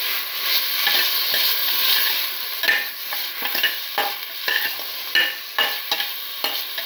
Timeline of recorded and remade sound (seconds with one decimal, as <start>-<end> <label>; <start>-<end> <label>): 0.0-6.9 recorded